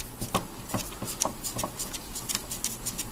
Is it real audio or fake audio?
real